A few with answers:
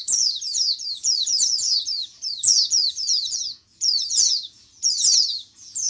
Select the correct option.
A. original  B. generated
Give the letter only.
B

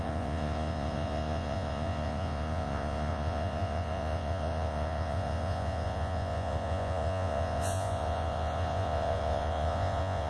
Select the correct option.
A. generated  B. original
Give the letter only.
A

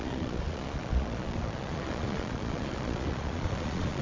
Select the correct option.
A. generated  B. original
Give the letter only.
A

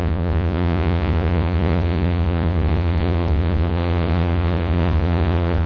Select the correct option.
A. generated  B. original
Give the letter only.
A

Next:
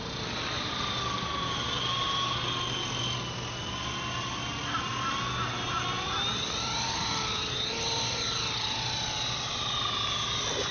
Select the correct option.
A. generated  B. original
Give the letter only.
B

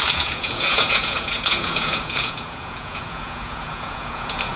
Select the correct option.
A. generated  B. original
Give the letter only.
A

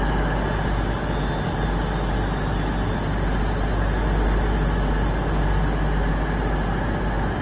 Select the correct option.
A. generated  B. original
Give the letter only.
B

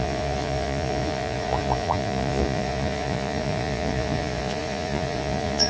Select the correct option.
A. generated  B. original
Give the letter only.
A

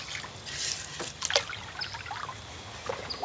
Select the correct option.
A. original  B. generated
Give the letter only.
A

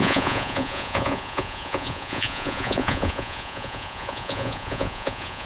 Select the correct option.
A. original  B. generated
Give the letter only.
B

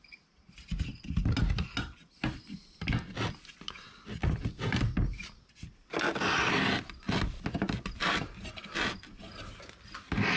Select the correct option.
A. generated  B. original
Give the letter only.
B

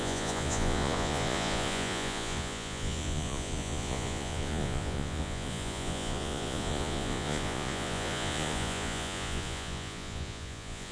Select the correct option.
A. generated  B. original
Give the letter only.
A